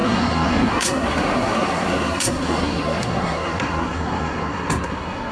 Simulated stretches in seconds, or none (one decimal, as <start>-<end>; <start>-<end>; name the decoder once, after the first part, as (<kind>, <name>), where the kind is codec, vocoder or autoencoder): 0.0-5.3 (codec, SNAC)